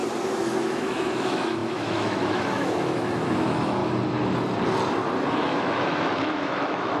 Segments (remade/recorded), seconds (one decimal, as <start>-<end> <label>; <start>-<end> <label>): 0.0-0.6 recorded; 0.6-3.8 remade; 3.8-5.3 recorded; 5.3-7.0 remade